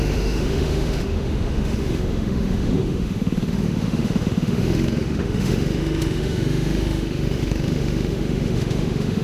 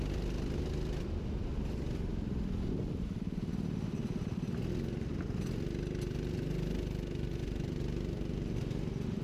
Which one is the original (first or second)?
second